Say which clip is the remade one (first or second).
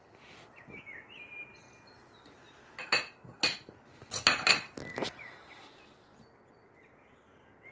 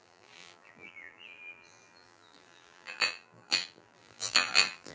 second